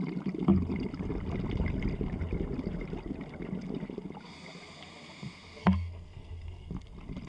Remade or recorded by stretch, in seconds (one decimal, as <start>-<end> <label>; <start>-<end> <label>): 0.0-5.6 recorded; 5.6-6.7 remade; 6.7-7.3 recorded